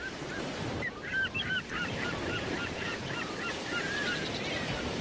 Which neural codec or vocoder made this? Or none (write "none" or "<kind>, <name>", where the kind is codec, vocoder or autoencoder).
vocoder, BigVGAN v2